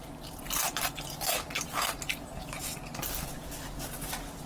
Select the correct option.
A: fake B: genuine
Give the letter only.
B